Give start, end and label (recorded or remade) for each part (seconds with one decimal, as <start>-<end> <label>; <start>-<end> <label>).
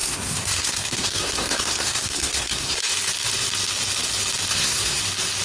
0.0-2.8 remade; 2.8-4.5 recorded; 4.5-5.0 remade; 5.0-5.4 recorded